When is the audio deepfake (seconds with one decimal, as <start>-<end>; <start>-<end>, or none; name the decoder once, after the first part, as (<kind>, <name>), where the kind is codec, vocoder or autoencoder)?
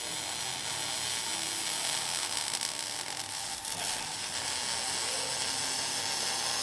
none